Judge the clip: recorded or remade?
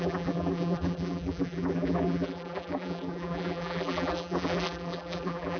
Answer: remade